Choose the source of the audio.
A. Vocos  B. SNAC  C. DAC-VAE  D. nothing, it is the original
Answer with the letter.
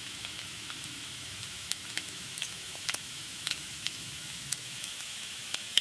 C